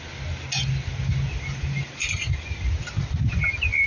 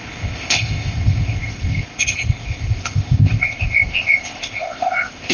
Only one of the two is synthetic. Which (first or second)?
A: second